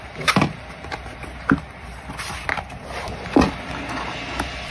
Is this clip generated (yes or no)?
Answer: no